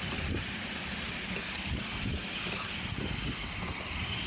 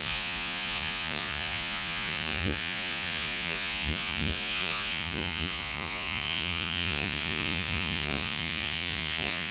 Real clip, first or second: first